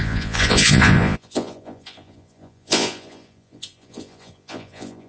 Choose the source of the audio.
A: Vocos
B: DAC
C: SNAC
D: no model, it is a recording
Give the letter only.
A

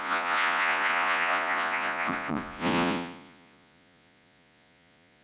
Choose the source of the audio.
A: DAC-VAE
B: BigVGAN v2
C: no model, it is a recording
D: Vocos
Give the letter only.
D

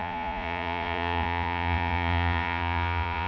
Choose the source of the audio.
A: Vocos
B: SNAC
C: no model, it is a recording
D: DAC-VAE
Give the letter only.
A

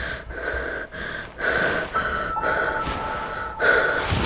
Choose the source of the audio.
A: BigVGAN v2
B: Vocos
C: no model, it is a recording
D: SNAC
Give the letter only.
C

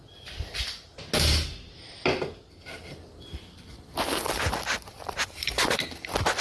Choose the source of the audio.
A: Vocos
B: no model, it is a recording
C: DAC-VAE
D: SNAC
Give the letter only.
B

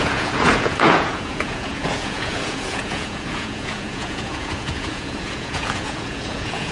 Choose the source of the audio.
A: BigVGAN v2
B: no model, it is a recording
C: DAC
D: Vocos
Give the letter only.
D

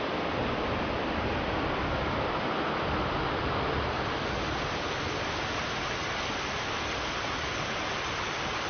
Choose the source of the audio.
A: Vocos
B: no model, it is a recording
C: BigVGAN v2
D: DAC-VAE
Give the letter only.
B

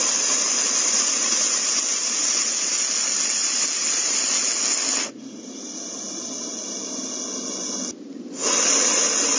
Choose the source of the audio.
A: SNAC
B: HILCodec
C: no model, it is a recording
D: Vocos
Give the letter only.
C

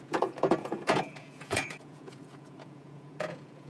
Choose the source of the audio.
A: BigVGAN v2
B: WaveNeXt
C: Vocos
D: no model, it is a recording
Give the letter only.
C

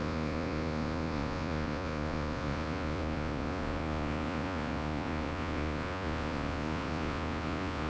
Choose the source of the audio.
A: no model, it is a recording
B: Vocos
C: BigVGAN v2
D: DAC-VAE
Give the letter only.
B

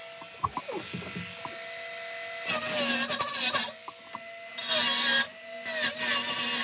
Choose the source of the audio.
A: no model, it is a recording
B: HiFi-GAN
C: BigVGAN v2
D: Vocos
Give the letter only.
A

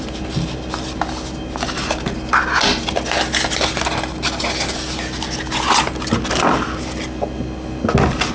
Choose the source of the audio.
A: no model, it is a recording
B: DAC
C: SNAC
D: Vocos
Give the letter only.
A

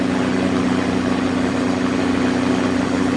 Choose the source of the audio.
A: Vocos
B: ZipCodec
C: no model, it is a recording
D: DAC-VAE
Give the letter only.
C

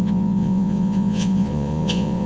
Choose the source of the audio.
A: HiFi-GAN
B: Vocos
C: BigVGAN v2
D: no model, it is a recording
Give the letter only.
B